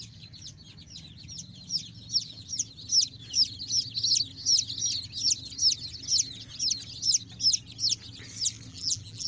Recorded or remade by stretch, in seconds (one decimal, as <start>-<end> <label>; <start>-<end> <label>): 0.0-8.7 recorded; 8.7-9.3 remade